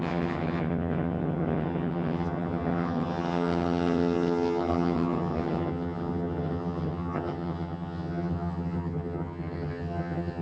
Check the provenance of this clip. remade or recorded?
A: remade